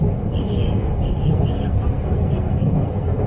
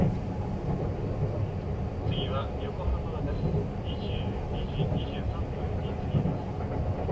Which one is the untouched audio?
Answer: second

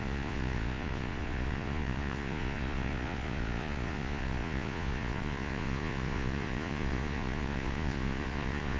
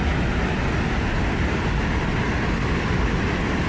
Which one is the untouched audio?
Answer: second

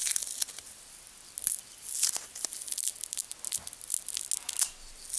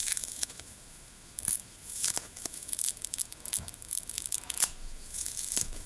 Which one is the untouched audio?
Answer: first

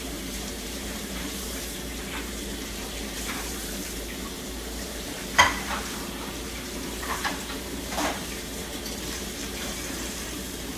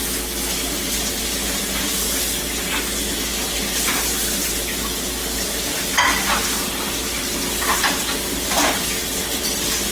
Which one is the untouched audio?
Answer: second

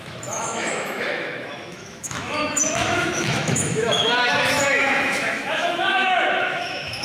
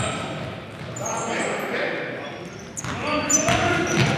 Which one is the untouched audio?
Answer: second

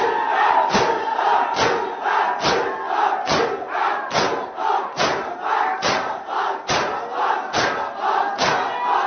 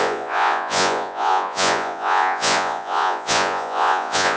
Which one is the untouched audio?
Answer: first